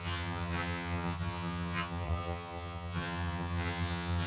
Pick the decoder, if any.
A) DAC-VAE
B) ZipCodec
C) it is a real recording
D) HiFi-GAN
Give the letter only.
D